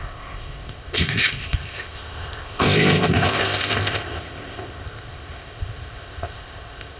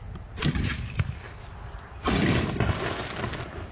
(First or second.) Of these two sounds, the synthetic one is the first